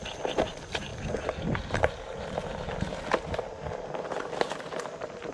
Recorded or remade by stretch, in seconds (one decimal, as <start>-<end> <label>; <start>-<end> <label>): 0.0-5.3 recorded